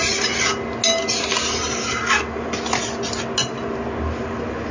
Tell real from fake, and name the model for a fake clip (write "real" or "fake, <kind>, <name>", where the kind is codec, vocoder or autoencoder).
real